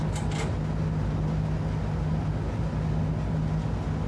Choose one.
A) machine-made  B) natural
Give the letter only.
B